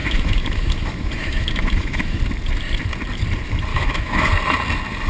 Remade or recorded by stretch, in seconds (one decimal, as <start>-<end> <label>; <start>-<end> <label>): 0.0-2.2 remade; 2.2-3.7 recorded; 3.7-4.3 remade; 4.3-5.1 recorded